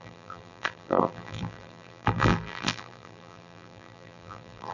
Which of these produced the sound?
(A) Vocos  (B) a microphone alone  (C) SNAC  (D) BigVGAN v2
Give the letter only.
D